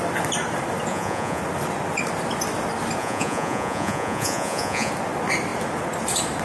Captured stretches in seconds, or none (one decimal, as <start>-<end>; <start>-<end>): 0.0-0.9; 1.4-3.0; 4.9-6.4